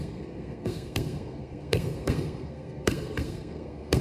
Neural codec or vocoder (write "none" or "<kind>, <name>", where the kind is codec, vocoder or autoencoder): codec, SNAC